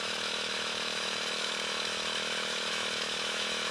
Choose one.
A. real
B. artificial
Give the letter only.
B